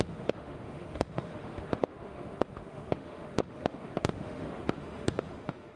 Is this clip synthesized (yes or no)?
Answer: yes